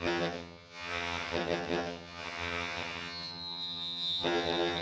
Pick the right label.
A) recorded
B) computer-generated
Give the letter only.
B